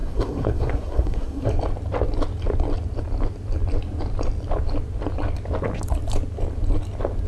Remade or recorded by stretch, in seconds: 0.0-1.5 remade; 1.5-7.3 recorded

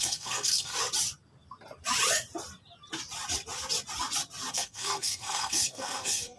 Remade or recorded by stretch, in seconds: 0.0-0.7 remade; 0.7-4.5 recorded; 4.5-6.4 remade

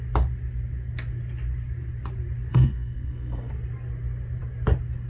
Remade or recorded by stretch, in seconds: 0.0-2.5 recorded; 2.5-3.5 remade; 3.5-5.1 recorded